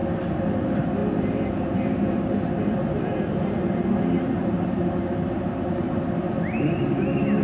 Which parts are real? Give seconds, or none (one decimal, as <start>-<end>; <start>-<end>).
0.0-0.6

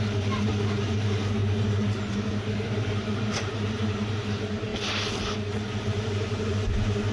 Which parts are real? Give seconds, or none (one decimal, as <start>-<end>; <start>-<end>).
4.7-5.8